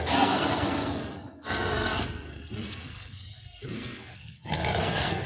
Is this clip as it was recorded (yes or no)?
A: no